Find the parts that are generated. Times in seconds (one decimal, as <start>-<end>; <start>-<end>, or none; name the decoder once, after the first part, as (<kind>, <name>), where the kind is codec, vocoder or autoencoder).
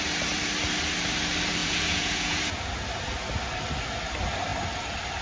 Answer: 1.6-2.4 (vocoder, Vocos)